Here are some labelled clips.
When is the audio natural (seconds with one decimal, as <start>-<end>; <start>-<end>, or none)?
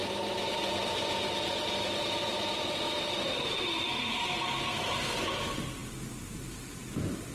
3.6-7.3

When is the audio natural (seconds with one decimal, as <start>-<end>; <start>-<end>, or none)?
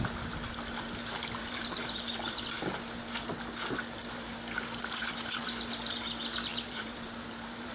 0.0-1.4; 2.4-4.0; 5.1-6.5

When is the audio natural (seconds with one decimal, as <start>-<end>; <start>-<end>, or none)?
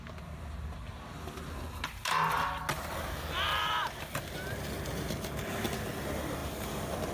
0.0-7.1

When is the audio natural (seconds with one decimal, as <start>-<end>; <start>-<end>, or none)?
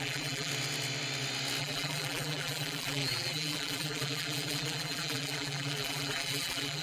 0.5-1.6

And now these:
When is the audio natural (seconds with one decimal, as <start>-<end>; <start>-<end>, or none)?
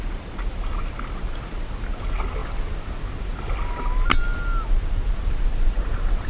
0.0-6.3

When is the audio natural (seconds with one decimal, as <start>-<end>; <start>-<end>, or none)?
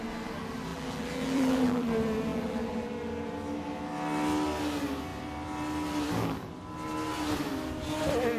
0.0-0.7; 1.9-2.3; 2.9-8.4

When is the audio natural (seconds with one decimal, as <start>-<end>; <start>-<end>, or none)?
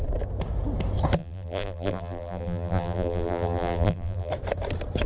0.0-1.2; 4.3-5.1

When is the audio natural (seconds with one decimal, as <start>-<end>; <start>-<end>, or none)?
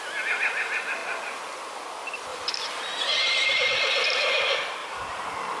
0.0-2.3; 3.7-4.8